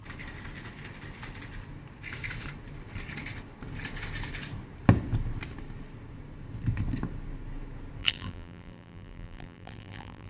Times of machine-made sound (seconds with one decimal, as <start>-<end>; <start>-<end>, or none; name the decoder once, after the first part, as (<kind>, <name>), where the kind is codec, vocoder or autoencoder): 8.0-10.3 (vocoder, BigVGAN v2)